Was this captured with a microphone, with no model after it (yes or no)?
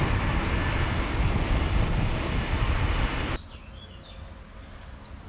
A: yes